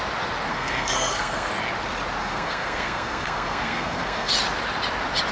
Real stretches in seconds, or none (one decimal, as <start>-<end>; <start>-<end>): 0.0-0.5; 1.5-2.2; 4.3-5.3

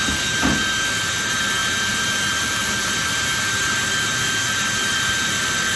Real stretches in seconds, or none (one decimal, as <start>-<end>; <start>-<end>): 0.0-5.8

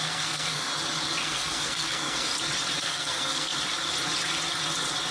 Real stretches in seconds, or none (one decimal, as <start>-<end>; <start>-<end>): 0.7-1.2; 2.3-2.8; 3.5-5.1

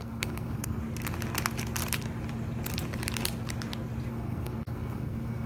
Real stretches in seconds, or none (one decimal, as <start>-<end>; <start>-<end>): 0.8-4.1

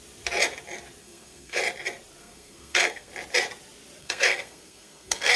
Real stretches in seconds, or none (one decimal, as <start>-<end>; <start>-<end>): 0.0-1.0; 1.6-2.2; 3.1-4.0

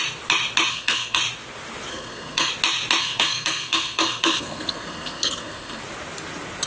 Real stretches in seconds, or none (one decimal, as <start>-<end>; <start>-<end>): 0.0-0.7; 1.2-1.9; 2.5-3.0; 5.8-6.7

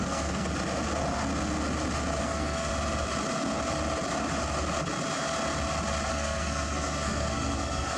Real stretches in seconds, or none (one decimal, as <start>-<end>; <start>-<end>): 0.5-2.2; 2.7-6.1